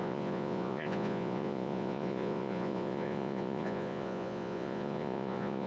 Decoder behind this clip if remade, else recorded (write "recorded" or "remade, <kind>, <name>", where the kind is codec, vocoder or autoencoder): remade, vocoder, Vocos